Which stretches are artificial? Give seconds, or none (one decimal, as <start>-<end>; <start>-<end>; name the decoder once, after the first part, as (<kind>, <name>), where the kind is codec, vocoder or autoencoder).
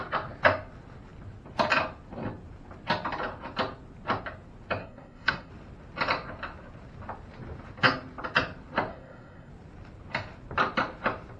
4.8-5.5 (codec, SNAC); 8.9-9.5